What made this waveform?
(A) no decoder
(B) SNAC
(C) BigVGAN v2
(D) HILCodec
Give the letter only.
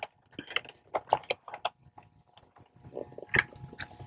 A